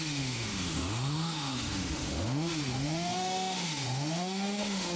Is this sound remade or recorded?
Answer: remade